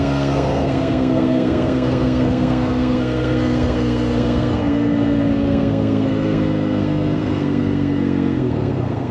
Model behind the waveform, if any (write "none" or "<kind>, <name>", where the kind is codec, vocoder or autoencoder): codec, SNAC